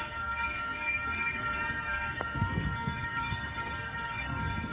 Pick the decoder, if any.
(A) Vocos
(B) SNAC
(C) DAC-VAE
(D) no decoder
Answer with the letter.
B